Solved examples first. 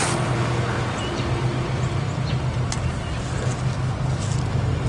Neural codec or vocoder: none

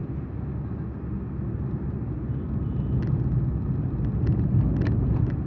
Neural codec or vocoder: none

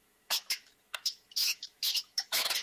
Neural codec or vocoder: autoencoder, DAC-VAE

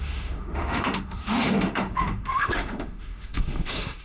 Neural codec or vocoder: autoencoder, DAC-VAE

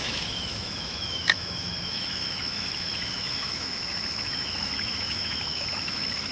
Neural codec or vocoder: autoencoder, DAC-VAE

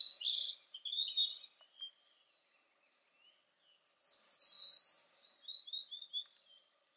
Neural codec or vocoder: none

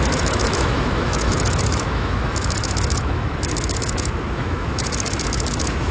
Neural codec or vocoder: autoencoder, DAC-VAE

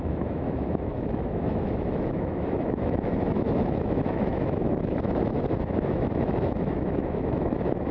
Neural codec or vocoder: autoencoder, DAC-VAE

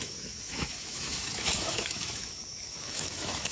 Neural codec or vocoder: autoencoder, DAC-VAE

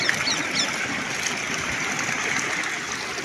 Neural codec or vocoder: none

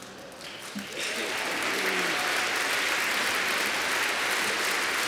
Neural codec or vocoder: none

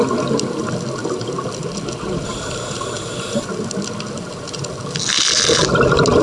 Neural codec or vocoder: none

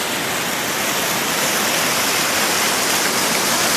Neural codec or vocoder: none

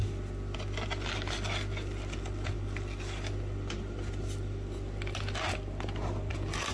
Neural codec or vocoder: none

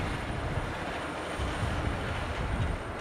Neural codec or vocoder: none